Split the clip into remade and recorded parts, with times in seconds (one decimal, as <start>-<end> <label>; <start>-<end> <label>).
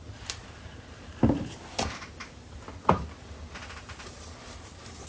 0.0-5.1 recorded